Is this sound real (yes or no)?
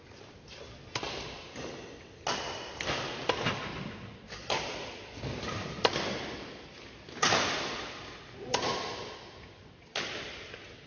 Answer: yes